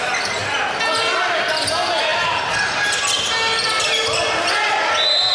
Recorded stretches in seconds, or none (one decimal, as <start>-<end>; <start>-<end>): 0.0-5.3